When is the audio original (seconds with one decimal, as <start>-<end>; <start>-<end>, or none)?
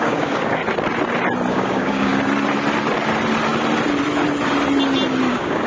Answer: 0.6-1.5; 2.1-5.3